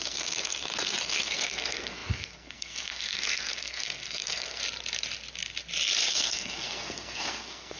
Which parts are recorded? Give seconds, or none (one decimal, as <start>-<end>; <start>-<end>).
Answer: 4.6-6.1